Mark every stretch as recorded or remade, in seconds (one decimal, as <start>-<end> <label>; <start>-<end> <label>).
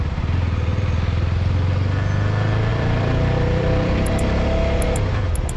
0.0-2.7 recorded; 2.7-4.1 remade; 4.1-5.6 recorded